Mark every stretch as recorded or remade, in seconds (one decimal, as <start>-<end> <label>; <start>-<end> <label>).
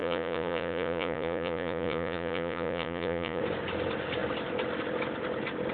0.0-3.4 remade; 3.4-5.7 recorded